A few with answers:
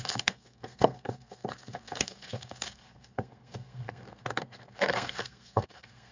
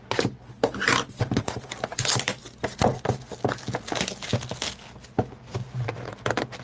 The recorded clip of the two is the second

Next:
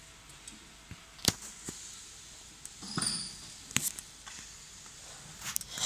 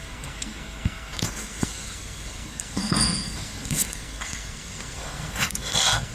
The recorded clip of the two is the first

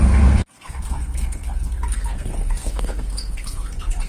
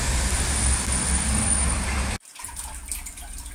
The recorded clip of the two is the second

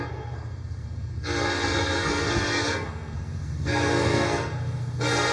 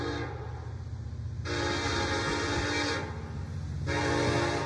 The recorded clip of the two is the second